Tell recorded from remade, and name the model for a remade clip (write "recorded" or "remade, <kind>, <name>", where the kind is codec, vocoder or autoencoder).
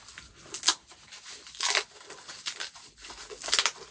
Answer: recorded